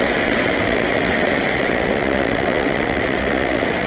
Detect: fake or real fake